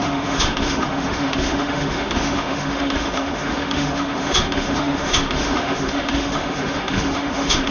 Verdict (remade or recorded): remade